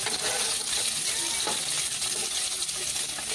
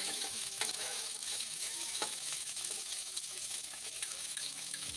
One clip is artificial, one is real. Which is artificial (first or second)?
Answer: second